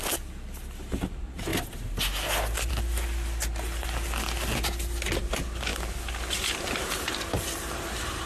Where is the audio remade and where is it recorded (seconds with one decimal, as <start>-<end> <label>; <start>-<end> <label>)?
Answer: 0.0-8.3 recorded